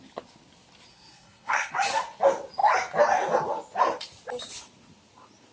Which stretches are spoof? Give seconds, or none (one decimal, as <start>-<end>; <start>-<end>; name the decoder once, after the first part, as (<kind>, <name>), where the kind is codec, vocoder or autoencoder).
0.9-1.7 (codec, SNAC)